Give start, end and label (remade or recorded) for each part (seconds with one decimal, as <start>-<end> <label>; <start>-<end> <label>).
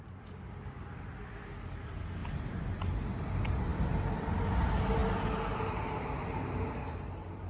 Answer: 0.0-2.2 recorded; 2.2-2.7 remade; 2.7-3.7 recorded; 3.7-4.3 remade; 4.3-7.5 recorded